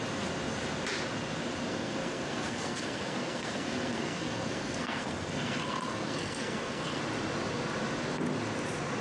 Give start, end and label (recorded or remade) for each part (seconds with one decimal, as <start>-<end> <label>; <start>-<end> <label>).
0.0-1.7 recorded; 1.7-7.0 remade; 7.0-9.0 recorded

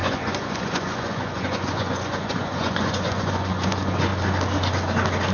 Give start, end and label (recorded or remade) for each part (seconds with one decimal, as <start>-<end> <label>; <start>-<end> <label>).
0.0-4.1 remade; 4.1-5.3 recorded